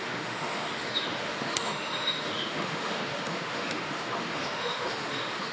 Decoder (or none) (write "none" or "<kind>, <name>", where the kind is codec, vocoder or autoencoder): autoencoder, DAC-VAE